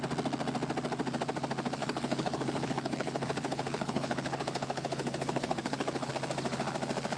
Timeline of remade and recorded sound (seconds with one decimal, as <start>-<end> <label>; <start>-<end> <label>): 0.0-1.8 recorded; 1.8-6.1 remade; 6.1-7.2 recorded